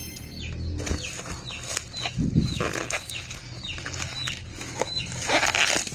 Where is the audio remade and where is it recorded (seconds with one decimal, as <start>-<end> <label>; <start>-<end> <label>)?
0.0-4.5 recorded; 4.5-5.0 remade; 5.0-5.9 recorded